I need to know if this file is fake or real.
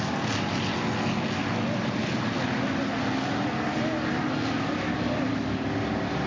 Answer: real